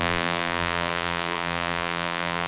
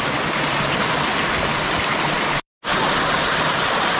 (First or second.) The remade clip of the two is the first